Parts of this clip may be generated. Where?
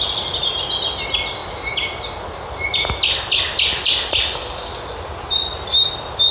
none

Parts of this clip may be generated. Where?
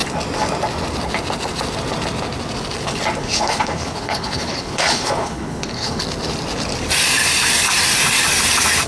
3.2-6.0